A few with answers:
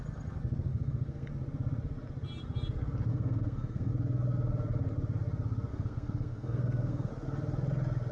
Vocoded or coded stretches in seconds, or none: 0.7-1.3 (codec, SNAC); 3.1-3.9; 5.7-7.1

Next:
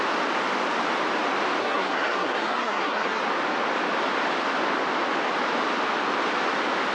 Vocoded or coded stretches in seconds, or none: 1.6-3.2 (codec, SNAC)